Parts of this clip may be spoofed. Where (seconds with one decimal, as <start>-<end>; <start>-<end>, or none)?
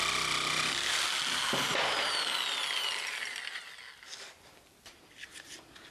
none